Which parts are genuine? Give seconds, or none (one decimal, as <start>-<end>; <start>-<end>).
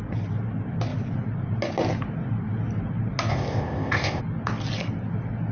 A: 0.0-3.3; 4.2-5.5